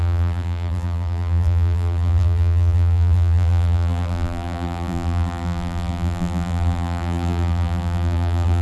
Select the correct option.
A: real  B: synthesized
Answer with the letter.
B